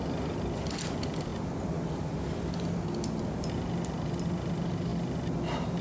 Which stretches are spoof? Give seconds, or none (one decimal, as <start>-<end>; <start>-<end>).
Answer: none